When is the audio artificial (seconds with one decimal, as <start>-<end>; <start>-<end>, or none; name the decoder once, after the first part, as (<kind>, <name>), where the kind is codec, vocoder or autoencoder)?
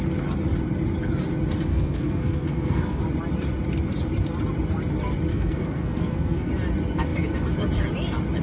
1.7-3.0 (codec, SNAC); 5.3-6.5